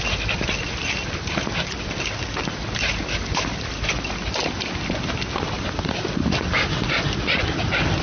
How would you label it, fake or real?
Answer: real